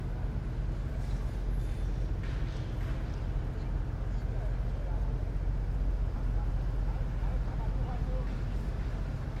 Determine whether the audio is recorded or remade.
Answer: recorded